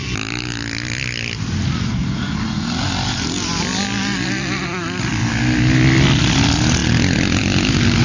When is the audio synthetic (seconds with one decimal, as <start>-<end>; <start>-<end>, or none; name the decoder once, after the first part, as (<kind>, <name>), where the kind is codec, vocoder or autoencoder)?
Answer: none